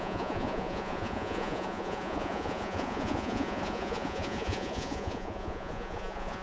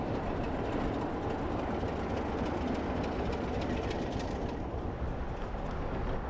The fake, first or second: first